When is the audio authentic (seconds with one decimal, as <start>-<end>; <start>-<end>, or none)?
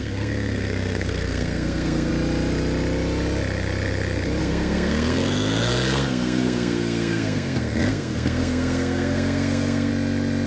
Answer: 2.1-4.4; 9.9-10.5